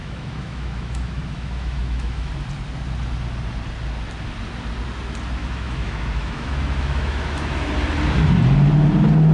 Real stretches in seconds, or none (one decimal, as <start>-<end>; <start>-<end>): 2.3-5.4; 7.7-9.3